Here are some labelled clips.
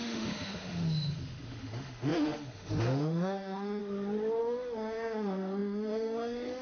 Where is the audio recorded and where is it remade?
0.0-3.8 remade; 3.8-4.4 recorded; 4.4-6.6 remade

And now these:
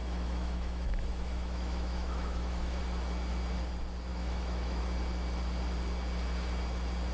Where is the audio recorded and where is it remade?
0.0-2.8 remade; 2.8-4.1 recorded; 4.1-4.8 remade; 4.8-7.1 recorded

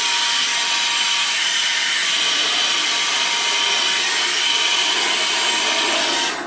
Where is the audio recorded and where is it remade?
0.0-6.5 recorded

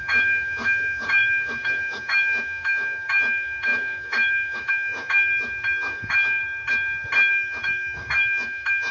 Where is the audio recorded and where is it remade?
0.0-5.3 remade; 5.3-5.9 recorded; 5.9-6.4 remade; 6.4-7.3 recorded; 7.3-8.9 remade

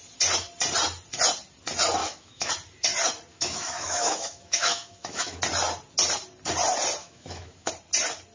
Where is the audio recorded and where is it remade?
0.0-2.0 recorded; 2.0-2.5 remade; 2.5-3.3 recorded; 3.3-5.4 remade; 5.4-7.0 recorded; 7.0-7.7 remade; 7.7-8.3 recorded

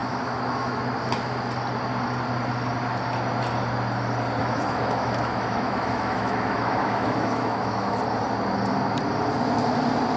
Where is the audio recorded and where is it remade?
0.0-0.8 remade; 0.8-4.4 recorded; 4.4-8.0 remade; 8.0-10.2 recorded